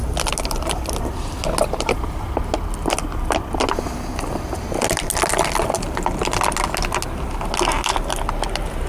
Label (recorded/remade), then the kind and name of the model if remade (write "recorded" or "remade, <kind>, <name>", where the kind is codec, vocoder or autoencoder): recorded